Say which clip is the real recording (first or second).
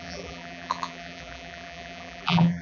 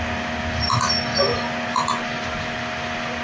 second